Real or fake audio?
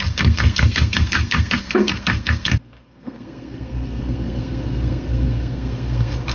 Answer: fake